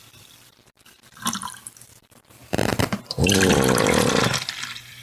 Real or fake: fake